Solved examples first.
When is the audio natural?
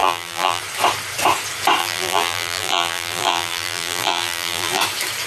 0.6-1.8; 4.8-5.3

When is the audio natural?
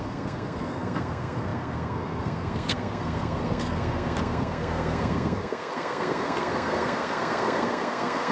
none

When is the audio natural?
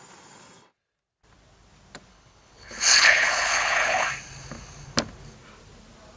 0.0-2.1; 4.1-6.2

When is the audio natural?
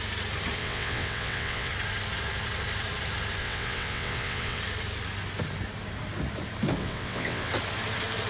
0.0-0.6; 1.7-3.4; 4.6-6.8; 7.5-8.3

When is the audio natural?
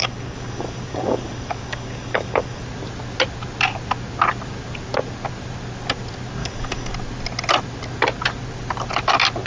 2.6-6.4; 6.9-9.5